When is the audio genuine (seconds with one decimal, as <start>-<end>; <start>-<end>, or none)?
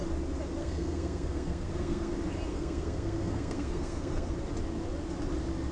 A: 0.0-0.6; 2.1-2.5; 4.3-5.7